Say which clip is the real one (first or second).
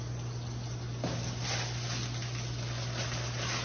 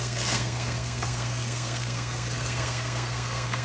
first